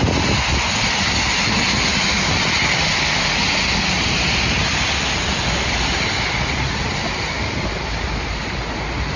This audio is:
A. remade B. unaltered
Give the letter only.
B